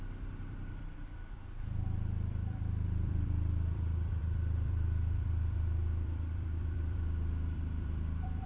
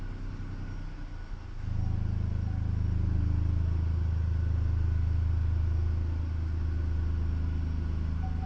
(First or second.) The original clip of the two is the second